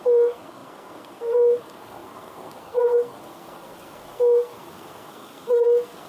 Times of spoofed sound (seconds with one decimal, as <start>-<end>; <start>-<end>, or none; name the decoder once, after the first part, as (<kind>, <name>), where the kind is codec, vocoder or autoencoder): 0.0-6.1 (codec, SNAC)